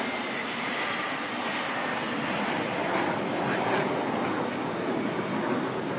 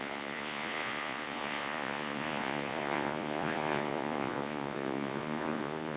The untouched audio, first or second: first